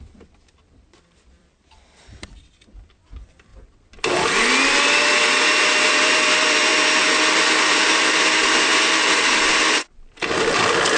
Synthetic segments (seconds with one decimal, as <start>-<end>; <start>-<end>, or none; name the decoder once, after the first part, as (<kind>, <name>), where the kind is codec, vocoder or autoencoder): 0.0-3.5 (vocoder, BigVGAN v2); 5.8-6.7; 7.3-11.0